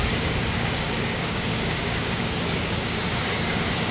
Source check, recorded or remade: remade